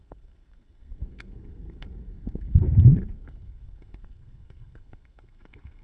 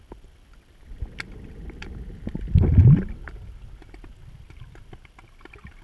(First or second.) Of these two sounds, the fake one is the first